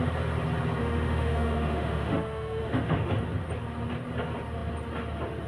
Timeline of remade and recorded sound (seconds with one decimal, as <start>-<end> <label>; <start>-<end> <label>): 0.0-0.8 recorded; 0.8-3.1 remade; 3.1-5.5 recorded